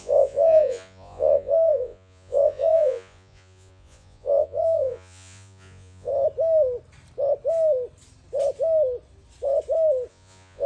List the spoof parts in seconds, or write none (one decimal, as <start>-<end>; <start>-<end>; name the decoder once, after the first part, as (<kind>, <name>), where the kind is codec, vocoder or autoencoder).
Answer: 0.0-6.1 (vocoder, Vocos); 10.1-10.7